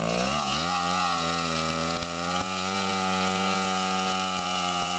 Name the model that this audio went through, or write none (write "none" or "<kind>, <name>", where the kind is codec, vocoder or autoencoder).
vocoder, Vocos